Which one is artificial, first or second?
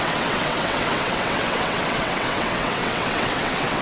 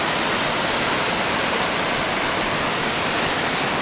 first